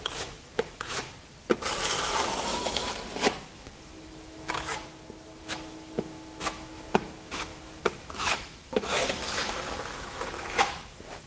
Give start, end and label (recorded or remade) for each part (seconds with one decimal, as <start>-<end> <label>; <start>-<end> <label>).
0.0-1.1 remade; 1.1-1.9 recorded; 1.9-4.7 remade; 4.7-5.4 recorded; 5.4-11.3 remade